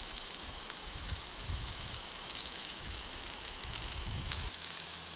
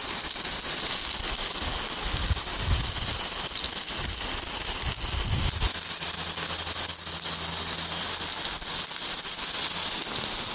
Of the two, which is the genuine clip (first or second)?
second